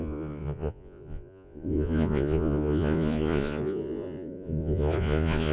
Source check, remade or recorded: remade